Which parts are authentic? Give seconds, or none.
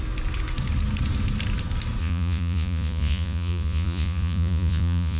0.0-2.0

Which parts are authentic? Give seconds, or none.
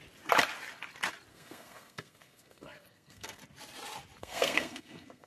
0.0-1.3; 3.4-4.2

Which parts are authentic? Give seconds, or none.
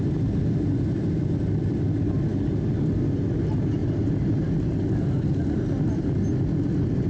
0.0-7.1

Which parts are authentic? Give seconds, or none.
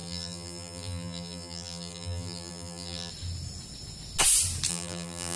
3.1-4.7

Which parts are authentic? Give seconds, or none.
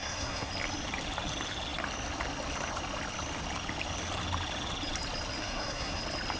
0.5-5.4; 6.0-6.4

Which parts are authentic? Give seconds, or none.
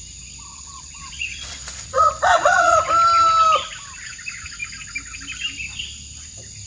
0.0-0.5; 2.9-6.7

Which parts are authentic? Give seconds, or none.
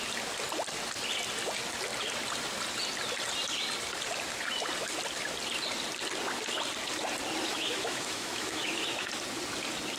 0.0-7.5; 9.1-10.0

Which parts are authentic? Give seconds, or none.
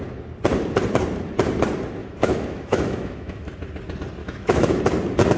0.0-2.0; 3.5-4.2; 4.8-5.4